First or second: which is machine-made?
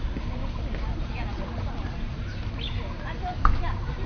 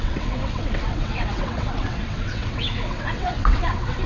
second